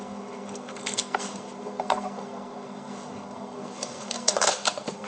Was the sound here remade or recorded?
remade